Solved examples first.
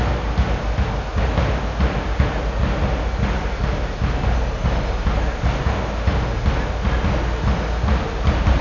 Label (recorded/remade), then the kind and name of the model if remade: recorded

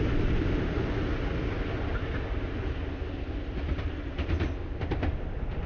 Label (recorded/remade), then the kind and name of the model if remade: recorded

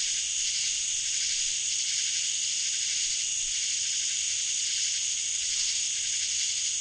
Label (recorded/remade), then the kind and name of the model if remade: recorded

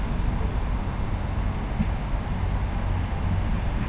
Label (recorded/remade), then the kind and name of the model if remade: recorded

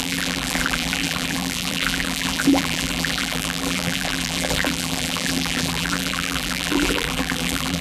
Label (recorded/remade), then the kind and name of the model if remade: remade, vocoder, BigVGAN v2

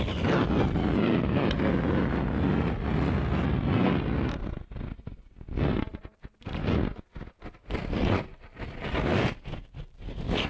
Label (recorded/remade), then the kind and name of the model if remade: recorded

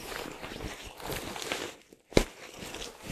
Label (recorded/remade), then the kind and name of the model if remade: recorded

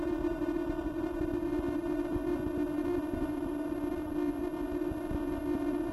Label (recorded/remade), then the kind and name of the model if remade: recorded